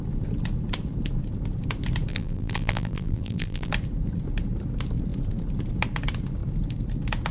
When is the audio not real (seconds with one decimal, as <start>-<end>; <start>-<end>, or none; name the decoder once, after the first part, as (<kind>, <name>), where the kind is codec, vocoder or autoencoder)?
2.1-3.7 (vocoder, BigVGAN v2)